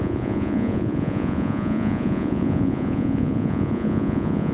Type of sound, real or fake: fake